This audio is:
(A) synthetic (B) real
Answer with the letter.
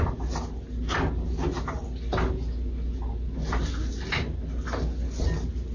B